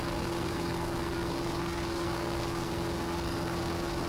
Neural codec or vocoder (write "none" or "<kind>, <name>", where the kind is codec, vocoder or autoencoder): codec, SNAC